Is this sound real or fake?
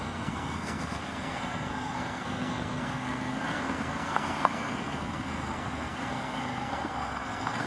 fake